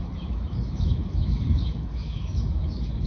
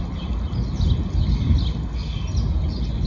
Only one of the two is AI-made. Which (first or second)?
first